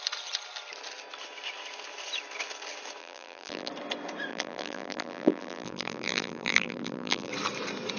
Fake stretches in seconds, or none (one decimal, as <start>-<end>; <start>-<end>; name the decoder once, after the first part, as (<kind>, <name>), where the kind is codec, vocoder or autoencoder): 3.0-3.7 (vocoder, BigVGAN v2); 4.3-7.3